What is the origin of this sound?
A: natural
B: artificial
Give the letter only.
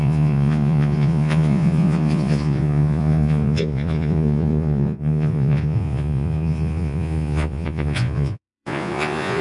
B